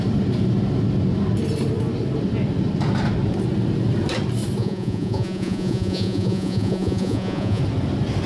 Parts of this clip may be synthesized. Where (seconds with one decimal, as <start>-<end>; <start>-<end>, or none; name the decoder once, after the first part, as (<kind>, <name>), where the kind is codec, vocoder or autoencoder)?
4.6-7.6 (vocoder, Vocos)